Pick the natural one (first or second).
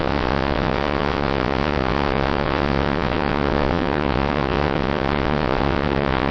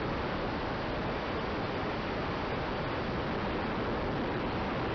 second